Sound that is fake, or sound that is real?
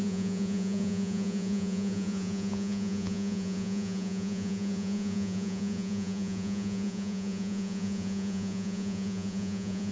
fake